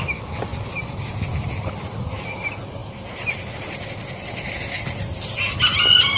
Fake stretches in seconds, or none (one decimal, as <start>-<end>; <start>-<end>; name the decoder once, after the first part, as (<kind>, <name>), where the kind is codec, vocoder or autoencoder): none

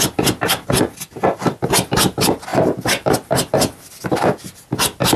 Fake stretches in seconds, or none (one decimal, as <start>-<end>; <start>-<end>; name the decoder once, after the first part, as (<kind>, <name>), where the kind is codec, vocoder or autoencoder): none

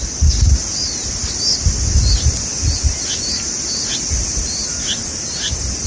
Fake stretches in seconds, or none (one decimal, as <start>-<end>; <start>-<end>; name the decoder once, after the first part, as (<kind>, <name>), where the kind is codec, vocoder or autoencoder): none

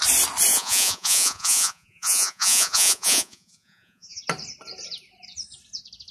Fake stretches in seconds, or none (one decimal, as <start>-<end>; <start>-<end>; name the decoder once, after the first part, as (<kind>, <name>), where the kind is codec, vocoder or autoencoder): 0.5-4.2 (vocoder, Vocos)

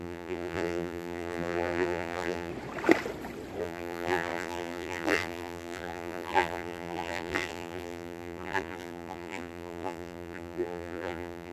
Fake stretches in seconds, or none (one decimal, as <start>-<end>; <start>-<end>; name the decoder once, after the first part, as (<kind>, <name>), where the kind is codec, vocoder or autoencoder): 0.0-2.5 (vocoder, BigVGAN v2); 3.6-11.5

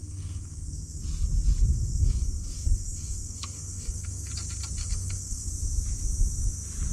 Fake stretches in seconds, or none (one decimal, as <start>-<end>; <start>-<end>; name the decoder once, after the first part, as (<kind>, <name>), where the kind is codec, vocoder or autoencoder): 0.0-1.0 (codec, SNAC); 1.7-4.3; 4.8-5.5